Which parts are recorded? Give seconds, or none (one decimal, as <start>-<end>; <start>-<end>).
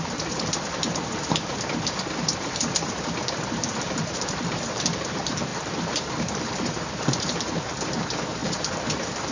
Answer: none